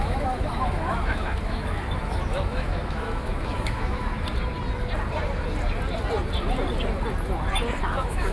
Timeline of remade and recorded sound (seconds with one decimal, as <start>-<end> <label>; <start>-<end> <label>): 0.0-4.1 remade; 4.1-7.8 recorded; 7.8-8.3 remade